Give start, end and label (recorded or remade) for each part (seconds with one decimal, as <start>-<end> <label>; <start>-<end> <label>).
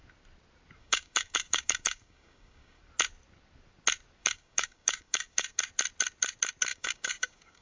0.0-0.8 recorded; 0.8-2.8 remade; 2.8-4.2 recorded; 4.2-5.6 remade; 5.6-6.7 recorded; 6.7-7.6 remade